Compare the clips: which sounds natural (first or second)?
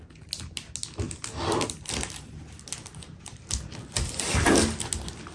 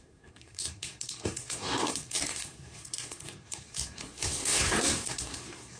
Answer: first